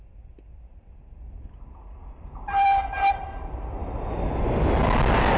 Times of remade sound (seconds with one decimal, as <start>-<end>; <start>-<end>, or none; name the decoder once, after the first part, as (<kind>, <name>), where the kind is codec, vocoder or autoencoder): none